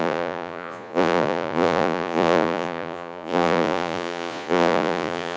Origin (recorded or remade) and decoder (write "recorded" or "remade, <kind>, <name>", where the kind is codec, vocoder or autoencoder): remade, vocoder, Vocos